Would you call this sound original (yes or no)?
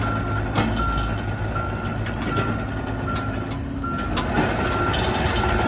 yes